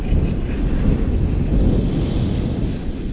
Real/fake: real